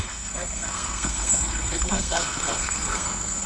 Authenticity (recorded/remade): remade